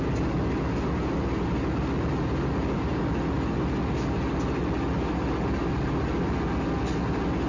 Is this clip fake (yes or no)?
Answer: no